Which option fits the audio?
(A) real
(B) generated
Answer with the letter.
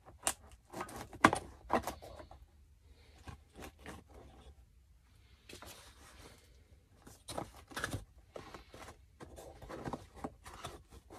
A